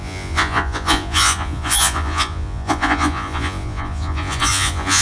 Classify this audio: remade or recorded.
remade